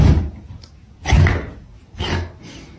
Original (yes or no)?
yes